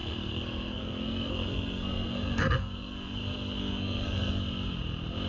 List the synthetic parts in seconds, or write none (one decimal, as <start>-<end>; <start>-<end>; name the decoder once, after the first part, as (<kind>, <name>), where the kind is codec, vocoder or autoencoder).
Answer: 0.0-3.2 (codec, SNAC); 3.6-4.3